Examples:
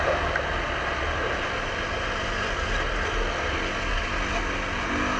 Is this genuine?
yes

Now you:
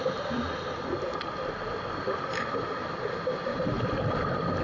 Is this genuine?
yes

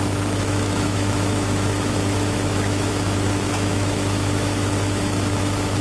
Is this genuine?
no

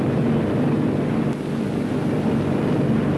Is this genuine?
yes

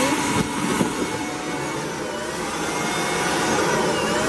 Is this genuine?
yes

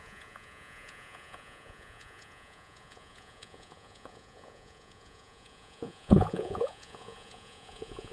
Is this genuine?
no